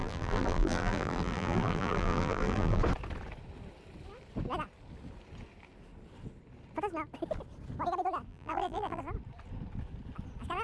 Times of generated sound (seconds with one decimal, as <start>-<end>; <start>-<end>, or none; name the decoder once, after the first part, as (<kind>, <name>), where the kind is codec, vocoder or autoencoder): 0.0-2.8 (vocoder, BigVGAN v2); 8.3-9.0